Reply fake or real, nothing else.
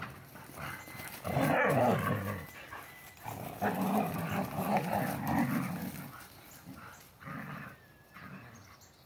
real